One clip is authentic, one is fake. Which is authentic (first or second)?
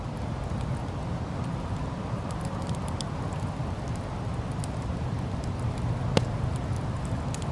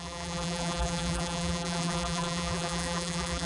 first